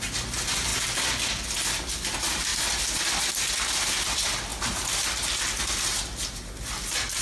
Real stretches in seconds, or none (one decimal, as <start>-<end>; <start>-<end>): 0.0-7.2